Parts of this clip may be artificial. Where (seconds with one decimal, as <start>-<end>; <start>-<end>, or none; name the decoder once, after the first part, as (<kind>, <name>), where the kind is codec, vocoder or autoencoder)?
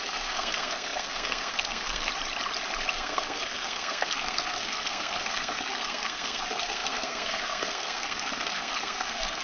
0.0-2.1 (codec, SNAC); 2.9-9.4